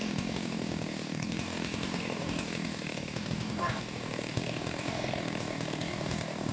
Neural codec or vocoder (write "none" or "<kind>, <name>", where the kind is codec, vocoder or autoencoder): codec, DAC